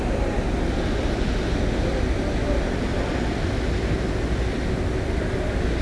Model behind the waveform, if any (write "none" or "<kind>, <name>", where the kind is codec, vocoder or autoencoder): none